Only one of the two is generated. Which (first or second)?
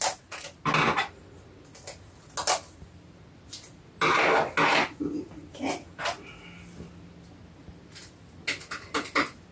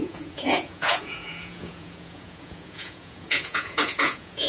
second